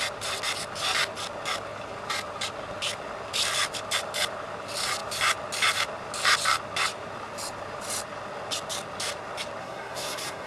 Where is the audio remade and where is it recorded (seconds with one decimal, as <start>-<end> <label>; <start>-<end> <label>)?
0.0-9.6 recorded; 9.6-10.5 remade